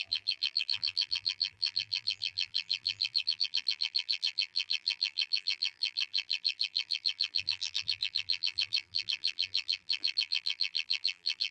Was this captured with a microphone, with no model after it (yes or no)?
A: no